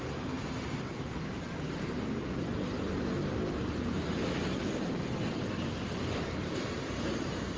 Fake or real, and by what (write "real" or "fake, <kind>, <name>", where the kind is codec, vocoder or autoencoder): fake, vocoder, BigVGAN v2